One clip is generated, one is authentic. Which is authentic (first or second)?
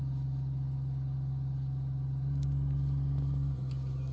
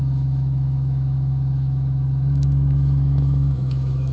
first